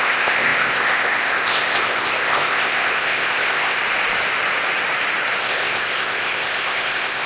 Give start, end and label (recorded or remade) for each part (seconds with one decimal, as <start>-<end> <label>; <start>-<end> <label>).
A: 0.0-3.8 remade; 3.8-5.4 recorded; 5.4-7.3 remade